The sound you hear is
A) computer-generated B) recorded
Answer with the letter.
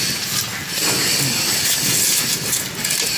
B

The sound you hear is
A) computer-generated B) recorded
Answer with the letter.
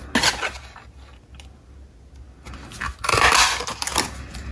B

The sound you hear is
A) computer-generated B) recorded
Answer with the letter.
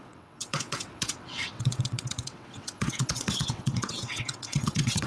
A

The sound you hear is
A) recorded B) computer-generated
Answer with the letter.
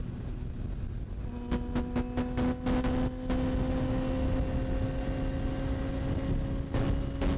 A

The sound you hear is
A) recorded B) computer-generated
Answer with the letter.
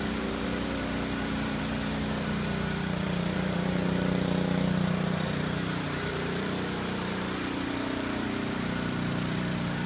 B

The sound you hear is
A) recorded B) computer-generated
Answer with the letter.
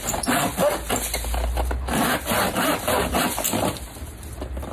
A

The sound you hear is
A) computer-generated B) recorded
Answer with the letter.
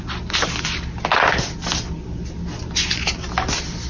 B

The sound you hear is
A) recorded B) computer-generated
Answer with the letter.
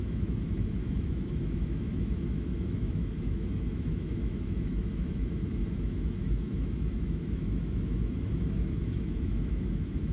B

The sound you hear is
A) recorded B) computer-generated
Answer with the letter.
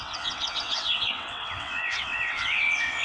B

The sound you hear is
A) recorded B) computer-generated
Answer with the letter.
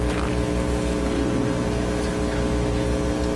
A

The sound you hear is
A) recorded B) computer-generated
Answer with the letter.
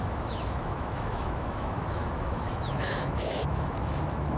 B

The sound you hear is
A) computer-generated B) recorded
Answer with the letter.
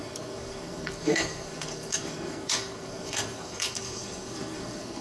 A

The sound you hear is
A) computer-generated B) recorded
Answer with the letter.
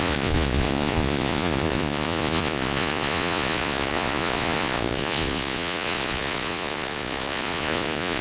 A